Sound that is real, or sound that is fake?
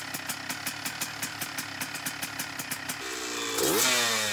real